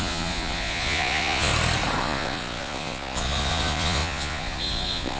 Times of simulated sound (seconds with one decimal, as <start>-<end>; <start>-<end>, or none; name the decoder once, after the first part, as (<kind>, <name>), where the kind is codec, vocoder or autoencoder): 0.0-1.5 (vocoder, Vocos); 2.0-5.2